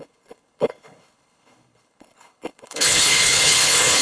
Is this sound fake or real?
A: fake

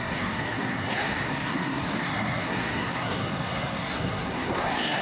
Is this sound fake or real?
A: fake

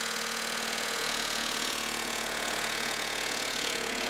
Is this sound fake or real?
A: fake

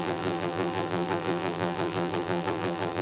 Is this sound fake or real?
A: fake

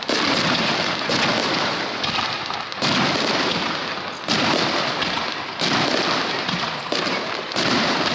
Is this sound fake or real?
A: real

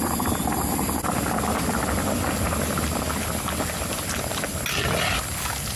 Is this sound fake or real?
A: real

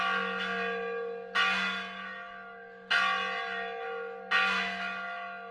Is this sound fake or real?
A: real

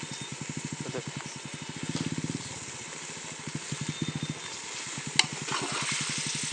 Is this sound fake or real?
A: real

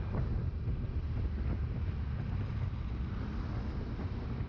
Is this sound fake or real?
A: real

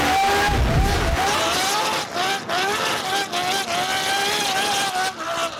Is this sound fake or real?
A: real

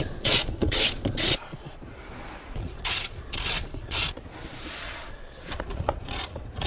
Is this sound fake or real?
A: fake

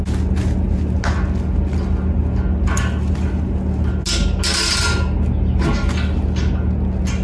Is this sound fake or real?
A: real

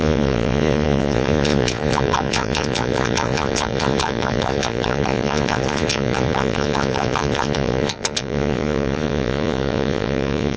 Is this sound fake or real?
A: fake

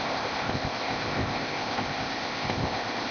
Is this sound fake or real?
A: fake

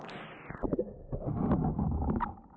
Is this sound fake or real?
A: real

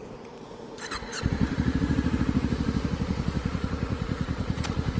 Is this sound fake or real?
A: fake